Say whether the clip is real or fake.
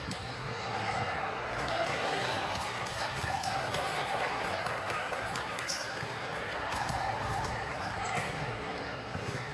fake